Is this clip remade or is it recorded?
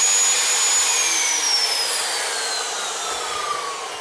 recorded